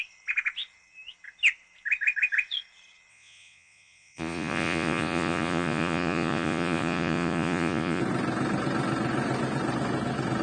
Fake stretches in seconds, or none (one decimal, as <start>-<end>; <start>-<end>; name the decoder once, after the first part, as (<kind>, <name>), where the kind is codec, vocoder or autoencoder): 3.1-8.0 (vocoder, Vocos)